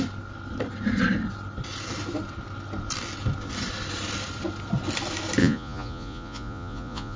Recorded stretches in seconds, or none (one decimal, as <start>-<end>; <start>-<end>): 0.0-5.4